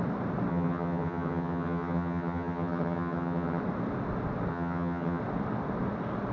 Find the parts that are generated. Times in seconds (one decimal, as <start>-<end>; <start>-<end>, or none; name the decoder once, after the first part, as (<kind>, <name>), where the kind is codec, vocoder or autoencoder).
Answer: 0.5-3.6 (vocoder, HiFi-GAN); 4.5-5.2